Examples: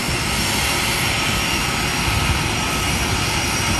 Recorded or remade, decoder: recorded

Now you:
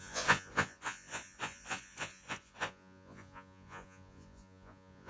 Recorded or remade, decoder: remade, vocoder, Vocos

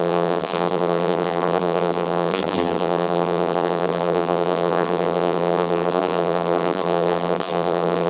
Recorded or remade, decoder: remade, vocoder, BigVGAN v2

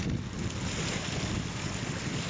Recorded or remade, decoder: recorded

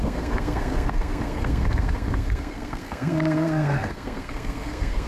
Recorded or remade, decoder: remade, codec, SNAC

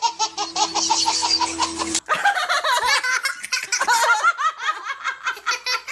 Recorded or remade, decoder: recorded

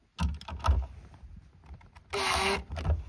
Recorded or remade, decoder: recorded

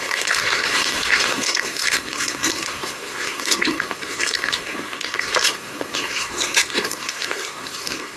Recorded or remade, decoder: remade, codec, SNAC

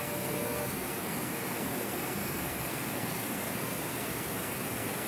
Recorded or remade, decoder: remade, codec, SNAC